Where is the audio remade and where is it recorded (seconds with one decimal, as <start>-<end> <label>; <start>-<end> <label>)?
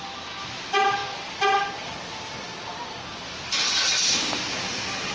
0.0-5.1 recorded